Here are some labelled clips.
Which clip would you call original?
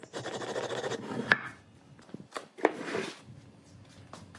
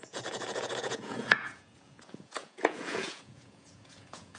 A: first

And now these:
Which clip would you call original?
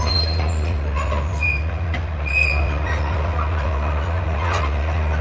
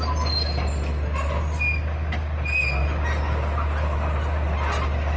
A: second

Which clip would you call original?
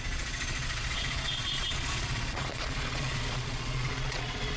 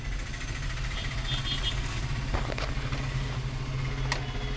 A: second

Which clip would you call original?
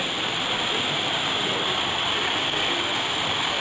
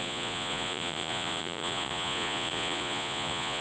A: first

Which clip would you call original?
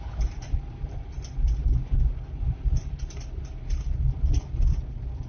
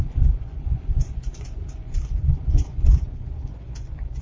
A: first